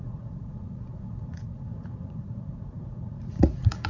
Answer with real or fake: fake